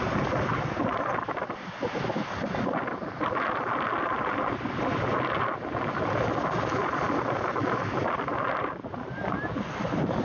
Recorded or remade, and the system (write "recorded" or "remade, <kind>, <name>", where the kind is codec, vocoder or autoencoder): recorded